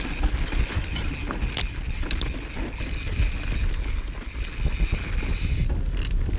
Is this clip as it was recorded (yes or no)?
yes